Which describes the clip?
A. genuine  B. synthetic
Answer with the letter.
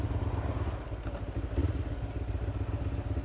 A